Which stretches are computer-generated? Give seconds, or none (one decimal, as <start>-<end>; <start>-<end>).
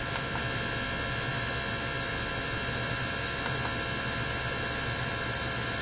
none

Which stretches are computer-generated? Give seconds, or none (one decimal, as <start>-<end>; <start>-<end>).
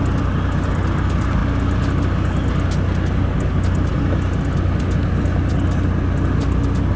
none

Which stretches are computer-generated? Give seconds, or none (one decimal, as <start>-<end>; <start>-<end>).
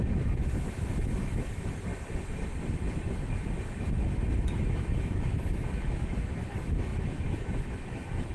0.0-1.9; 3.1-8.3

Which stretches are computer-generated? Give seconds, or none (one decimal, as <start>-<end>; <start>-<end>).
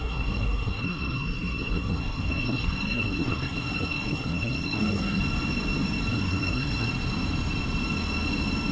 0.0-5.2; 6.1-6.9